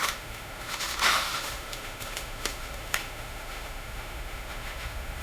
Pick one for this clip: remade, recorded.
remade